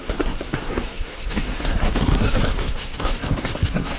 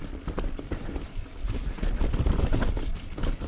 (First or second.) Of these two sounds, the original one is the second